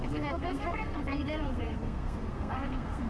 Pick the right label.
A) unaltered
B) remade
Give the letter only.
B